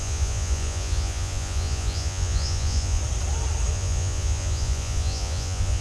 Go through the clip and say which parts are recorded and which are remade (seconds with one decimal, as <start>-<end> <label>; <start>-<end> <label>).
0.0-3.0 remade; 3.0-3.7 recorded; 3.7-5.8 remade